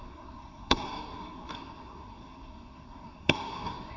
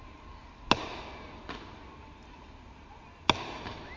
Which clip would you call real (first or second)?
second